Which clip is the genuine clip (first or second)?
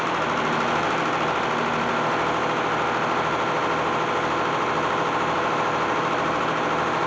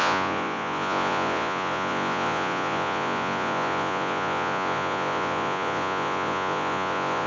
first